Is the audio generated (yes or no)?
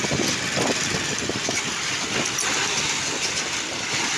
no